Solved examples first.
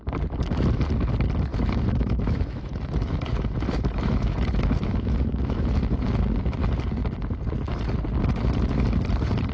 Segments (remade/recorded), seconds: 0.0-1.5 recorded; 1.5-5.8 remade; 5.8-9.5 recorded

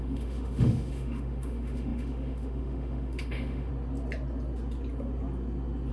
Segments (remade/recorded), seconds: 0.0-3.7 remade; 3.7-5.9 recorded

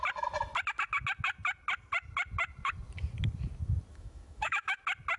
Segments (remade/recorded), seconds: 0.0-3.9 recorded; 3.9-4.8 remade; 4.8-5.2 recorded